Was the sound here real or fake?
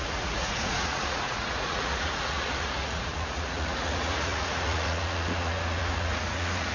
fake